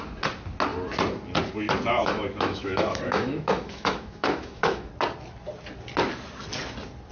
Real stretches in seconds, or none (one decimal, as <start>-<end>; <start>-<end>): 0.0-2.0; 4.9-7.1